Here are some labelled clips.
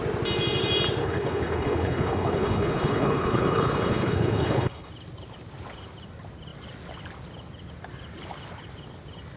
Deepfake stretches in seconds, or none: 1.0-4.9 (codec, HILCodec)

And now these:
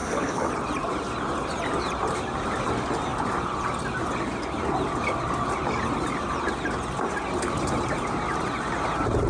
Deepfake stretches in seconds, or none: 0.0-0.5 (codec, HILCodec)